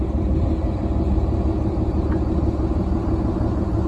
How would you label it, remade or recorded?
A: recorded